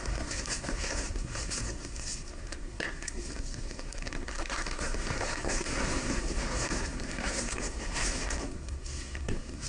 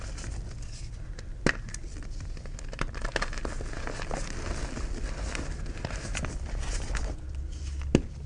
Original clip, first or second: second